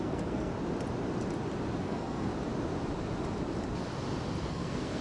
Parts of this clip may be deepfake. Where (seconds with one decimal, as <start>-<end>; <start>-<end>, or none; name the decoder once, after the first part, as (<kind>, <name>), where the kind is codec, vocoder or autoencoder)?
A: 0.0-0.5 (codec, SNAC); 1.8-2.3; 4.5-5.0